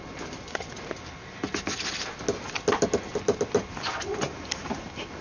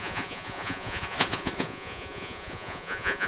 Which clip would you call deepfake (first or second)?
second